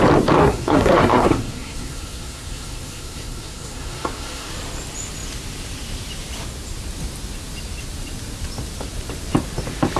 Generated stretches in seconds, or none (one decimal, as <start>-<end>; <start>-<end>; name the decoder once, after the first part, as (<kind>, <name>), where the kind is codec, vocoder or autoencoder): 0.4-4.5 (codec, SNAC)